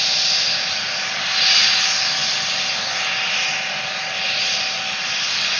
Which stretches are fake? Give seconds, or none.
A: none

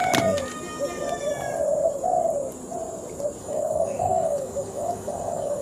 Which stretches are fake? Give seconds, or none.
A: 3.4-5.6 (codec, DAC)